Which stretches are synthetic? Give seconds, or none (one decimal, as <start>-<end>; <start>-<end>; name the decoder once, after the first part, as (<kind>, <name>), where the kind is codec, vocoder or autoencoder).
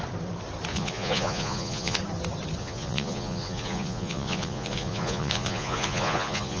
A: 0.7-2.0 (vocoder, Vocos); 2.6-6.6